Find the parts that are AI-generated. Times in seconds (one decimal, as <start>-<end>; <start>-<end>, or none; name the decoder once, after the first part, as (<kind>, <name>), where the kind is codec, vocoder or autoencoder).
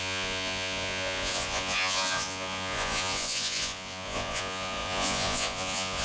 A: 0.0-6.0 (vocoder, Vocos)